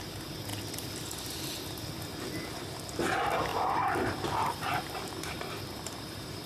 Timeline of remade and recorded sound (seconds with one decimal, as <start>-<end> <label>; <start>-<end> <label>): 0.0-3.5 recorded; 3.5-6.5 remade